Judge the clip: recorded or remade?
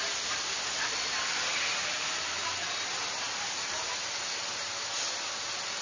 recorded